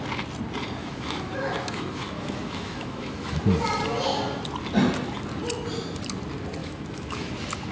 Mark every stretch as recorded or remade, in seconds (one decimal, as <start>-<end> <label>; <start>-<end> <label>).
0.0-0.8 recorded; 0.8-3.4 remade; 3.4-6.6 recorded; 6.6-7.3 remade; 7.3-7.7 recorded